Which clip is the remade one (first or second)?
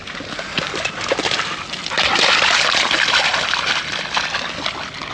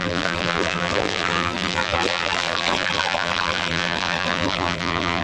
second